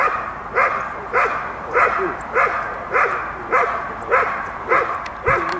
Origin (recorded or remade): remade